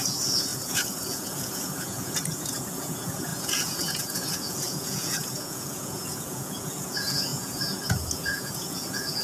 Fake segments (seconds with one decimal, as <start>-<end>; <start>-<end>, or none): 0.0-9.2